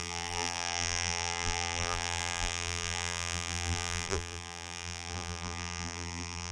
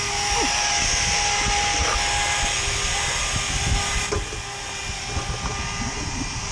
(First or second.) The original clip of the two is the second